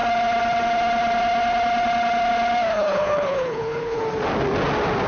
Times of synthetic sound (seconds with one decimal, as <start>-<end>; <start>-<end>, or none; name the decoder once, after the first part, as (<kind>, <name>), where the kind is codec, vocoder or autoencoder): 2.7-4.0 (codec, HILCodec)